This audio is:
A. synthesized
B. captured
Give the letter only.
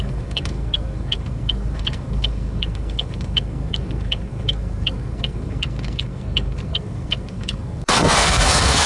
A